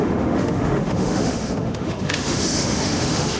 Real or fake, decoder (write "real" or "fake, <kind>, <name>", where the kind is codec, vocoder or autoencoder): fake, autoencoder, DAC-VAE